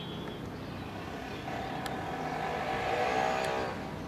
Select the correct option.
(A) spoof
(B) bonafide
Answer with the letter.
B